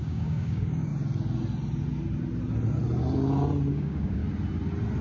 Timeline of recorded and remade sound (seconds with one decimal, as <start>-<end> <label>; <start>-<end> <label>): 0.0-0.9 remade; 0.9-3.7 recorded; 3.7-4.2 remade; 4.2-5.0 recorded